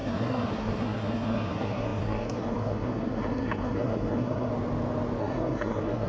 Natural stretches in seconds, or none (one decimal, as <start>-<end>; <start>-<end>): 4.5-5.2

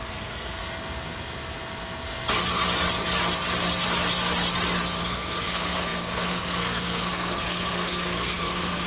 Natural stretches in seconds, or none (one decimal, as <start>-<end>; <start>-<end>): 0.6-5.0

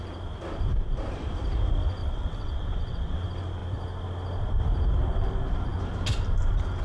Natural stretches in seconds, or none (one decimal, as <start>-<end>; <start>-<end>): 0.0-2.0; 3.2-6.8